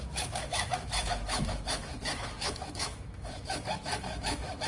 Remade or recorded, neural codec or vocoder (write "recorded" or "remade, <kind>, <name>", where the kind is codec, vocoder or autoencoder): remade, autoencoder, DAC-VAE